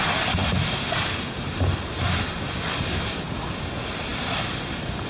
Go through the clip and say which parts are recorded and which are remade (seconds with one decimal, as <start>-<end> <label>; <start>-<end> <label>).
0.0-5.1 recorded